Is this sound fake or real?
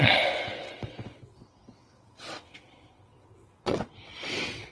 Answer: fake